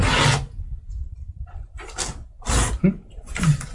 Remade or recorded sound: recorded